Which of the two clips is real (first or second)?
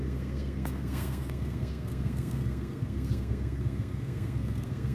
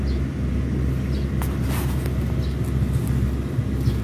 second